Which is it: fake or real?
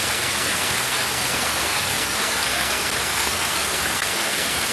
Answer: fake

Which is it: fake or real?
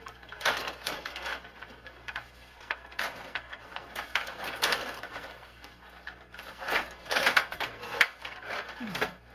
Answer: fake